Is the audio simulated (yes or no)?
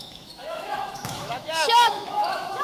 yes